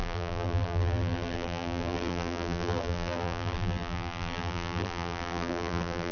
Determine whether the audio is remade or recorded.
remade